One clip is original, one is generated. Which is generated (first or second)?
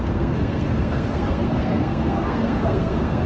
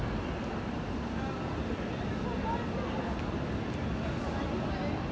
first